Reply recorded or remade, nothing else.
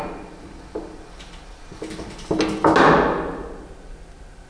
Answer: recorded